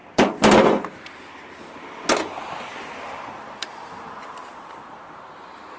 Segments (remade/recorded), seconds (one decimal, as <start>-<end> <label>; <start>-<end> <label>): 0.0-0.7 remade; 0.7-2.7 recorded; 2.7-5.0 remade; 5.0-5.8 recorded